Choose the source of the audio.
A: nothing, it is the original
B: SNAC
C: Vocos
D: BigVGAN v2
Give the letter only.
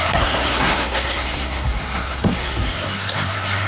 B